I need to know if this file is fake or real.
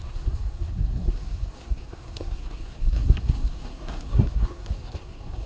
fake